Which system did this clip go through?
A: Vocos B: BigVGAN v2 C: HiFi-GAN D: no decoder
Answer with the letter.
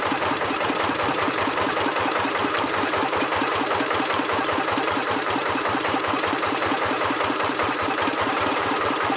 B